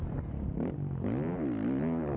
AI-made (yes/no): no